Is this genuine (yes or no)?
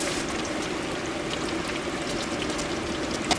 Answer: yes